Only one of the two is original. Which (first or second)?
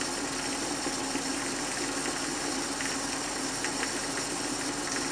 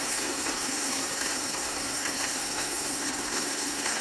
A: first